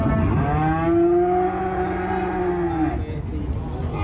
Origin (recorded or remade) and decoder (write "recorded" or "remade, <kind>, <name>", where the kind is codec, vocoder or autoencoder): recorded